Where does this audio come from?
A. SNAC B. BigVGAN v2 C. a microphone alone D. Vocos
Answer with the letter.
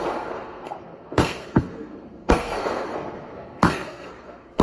A